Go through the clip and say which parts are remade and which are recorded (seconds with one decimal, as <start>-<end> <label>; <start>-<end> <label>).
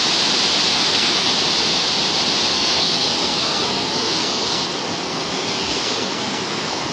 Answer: 0.0-0.7 recorded; 0.7-1.3 remade; 1.3-2.5 recorded; 2.5-6.9 remade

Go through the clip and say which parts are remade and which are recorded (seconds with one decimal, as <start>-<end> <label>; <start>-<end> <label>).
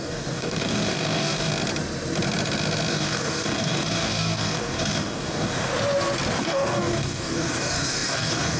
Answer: 0.0-1.5 remade; 1.5-2.9 recorded; 2.9-5.7 remade; 5.7-6.4 recorded; 6.4-8.6 remade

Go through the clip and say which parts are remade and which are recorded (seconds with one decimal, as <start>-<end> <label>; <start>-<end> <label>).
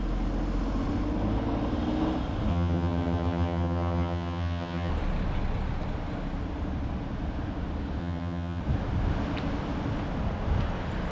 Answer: 0.0-2.5 recorded; 2.5-4.9 remade; 4.9-8.0 recorded; 8.0-8.6 remade; 8.6-11.1 recorded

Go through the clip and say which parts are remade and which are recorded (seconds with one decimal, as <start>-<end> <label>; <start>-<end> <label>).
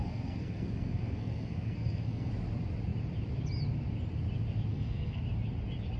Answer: 0.0-2.3 remade; 2.3-4.7 recorded; 4.7-5.2 remade; 5.2-6.0 recorded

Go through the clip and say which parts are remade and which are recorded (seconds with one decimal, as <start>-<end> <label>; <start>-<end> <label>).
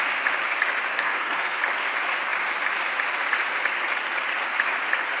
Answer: 0.0-0.9 recorded; 0.9-1.6 remade; 1.6-5.2 recorded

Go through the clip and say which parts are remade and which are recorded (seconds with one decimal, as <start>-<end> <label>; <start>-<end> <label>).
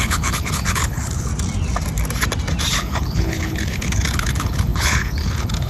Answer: 0.0-1.3 remade; 1.3-2.7 recorded; 2.7-5.7 remade